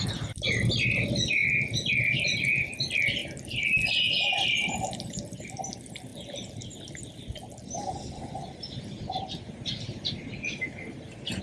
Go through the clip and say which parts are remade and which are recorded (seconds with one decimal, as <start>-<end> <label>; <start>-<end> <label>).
0.0-11.4 recorded